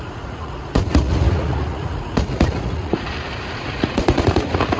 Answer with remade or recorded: remade